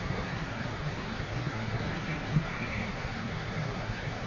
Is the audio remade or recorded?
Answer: remade